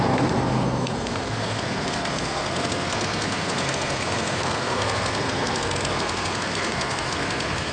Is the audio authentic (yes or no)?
no